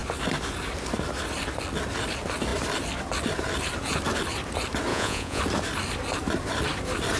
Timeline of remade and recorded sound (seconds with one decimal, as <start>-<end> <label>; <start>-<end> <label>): 0.0-4.9 recorded; 4.9-5.4 remade; 5.4-7.2 recorded